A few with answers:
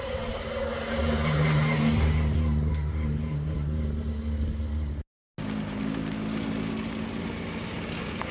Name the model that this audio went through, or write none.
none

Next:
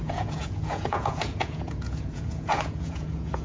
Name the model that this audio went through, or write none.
vocoder, Vocos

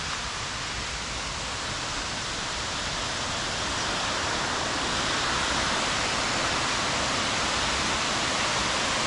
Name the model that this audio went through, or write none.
none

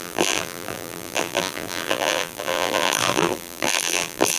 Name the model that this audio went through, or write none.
vocoder, BigVGAN v2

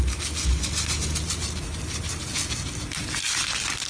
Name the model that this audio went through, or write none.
none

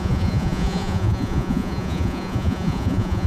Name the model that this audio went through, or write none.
vocoder, Vocos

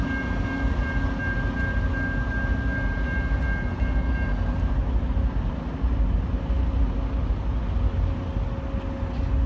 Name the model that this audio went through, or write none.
none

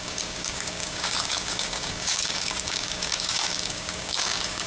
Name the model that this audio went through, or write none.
codec, DAC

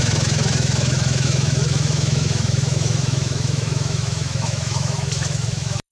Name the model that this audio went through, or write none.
autoencoder, DAC-VAE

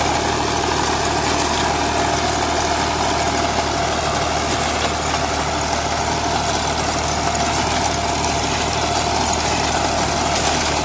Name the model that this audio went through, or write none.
none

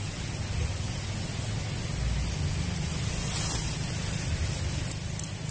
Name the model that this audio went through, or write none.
none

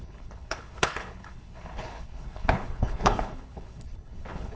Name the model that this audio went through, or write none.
codec, HILCodec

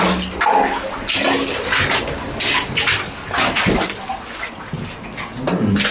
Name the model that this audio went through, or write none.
none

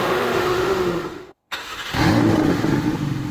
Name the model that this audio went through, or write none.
autoencoder, DAC-VAE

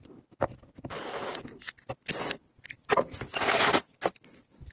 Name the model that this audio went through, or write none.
none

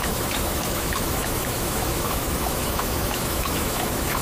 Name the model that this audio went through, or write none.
autoencoder, DAC-VAE